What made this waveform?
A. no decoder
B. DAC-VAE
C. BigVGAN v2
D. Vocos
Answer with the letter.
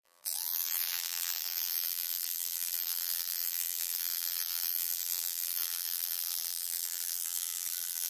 C